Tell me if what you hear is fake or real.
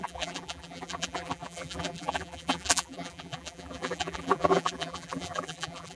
fake